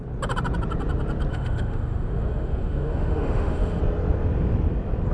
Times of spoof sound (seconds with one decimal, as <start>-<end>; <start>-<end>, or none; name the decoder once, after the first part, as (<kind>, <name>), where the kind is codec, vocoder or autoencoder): 1.3-3.8 (autoencoder, DAC-VAE)